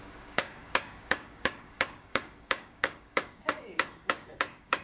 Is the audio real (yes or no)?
no